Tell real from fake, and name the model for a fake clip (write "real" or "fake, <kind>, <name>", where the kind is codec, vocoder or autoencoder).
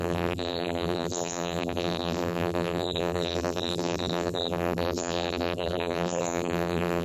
fake, vocoder, BigVGAN v2